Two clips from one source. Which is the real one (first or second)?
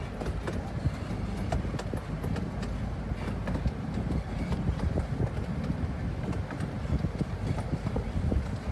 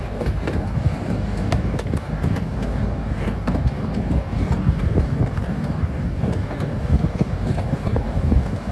first